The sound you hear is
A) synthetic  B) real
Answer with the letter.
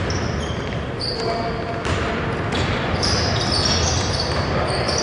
B